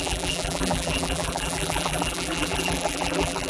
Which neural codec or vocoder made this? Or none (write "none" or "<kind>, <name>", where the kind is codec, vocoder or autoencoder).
vocoder, BigVGAN v2